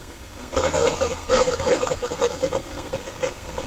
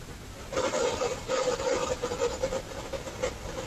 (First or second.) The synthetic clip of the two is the first